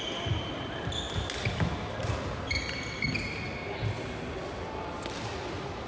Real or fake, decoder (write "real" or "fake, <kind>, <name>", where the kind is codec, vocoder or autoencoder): real